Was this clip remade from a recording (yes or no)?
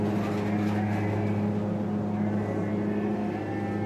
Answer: no